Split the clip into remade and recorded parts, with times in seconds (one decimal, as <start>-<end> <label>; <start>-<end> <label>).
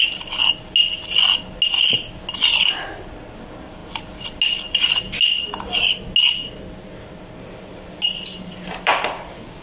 0.0-9.6 recorded